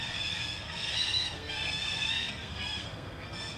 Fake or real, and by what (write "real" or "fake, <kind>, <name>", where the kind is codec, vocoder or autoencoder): fake, codec, SNAC